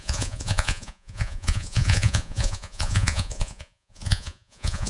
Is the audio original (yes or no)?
no